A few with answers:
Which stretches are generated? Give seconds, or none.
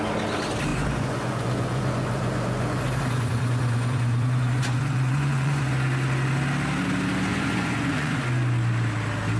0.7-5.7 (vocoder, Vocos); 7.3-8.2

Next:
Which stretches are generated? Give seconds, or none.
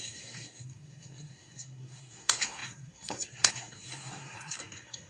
0.0-5.1 (codec, SNAC)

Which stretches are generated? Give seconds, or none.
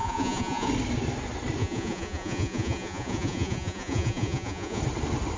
0.0-0.7 (vocoder, Vocos); 1.6-4.8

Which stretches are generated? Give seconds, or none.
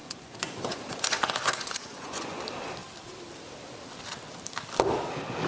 0.0-2.4 (vocoder, Vocos)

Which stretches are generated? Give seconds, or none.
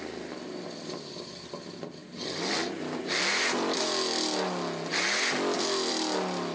none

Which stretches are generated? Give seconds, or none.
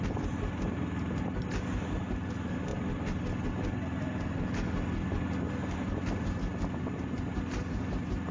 none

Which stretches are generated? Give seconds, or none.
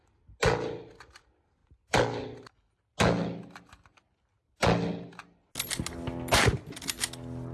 none